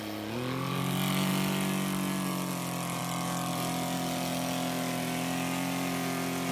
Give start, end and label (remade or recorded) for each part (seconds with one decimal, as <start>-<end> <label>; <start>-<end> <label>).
0.0-6.5 recorded